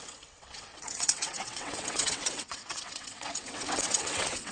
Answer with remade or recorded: remade